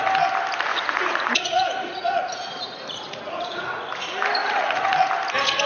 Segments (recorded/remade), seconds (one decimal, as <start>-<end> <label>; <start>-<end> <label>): 0.0-0.7 recorded; 0.7-3.8 remade; 3.8-4.4 recorded; 4.4-5.1 remade; 5.1-5.7 recorded